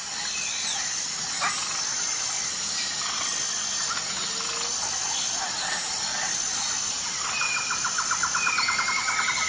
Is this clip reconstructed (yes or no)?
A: no